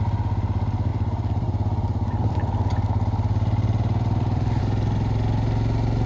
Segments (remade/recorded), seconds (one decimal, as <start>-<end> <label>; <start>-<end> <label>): 0.0-0.9 recorded; 0.9-4.6 remade; 4.6-6.1 recorded